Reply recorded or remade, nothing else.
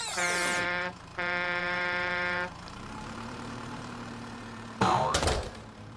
remade